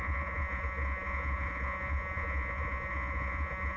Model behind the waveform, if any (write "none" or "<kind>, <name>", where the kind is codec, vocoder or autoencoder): vocoder, Vocos